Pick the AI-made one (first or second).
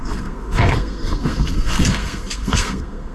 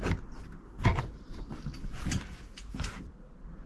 first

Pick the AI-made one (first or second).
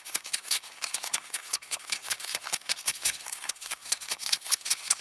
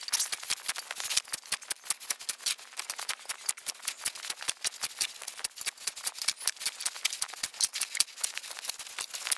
first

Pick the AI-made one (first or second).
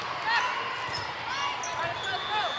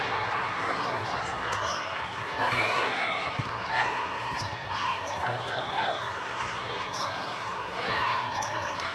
second